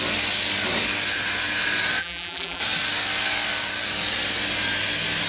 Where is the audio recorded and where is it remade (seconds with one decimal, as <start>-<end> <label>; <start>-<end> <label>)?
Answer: 0.0-2.0 recorded; 2.0-2.6 remade; 2.6-5.3 recorded